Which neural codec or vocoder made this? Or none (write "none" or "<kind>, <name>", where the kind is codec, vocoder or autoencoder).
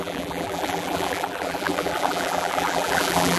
vocoder, BigVGAN v2